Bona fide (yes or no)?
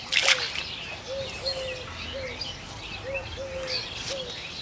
yes